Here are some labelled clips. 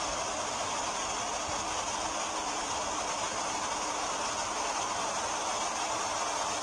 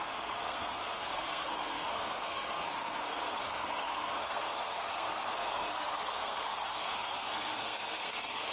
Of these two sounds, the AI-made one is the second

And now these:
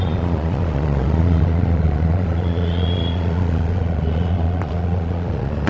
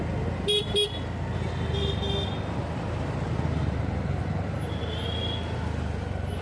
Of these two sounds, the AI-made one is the first